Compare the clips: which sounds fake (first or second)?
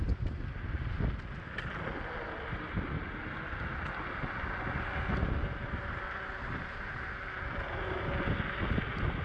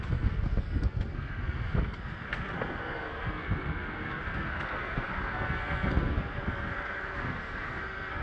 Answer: second